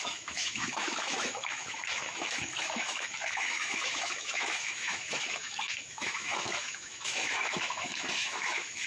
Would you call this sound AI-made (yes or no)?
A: yes